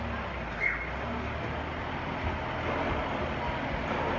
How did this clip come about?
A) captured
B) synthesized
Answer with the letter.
A